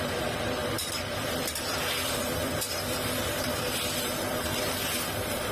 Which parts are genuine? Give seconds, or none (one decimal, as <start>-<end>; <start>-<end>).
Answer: none